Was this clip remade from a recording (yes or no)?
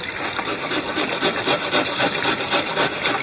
no